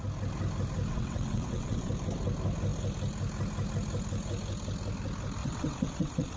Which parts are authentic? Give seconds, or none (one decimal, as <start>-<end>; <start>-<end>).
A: 0.0-0.9; 1.9-5.4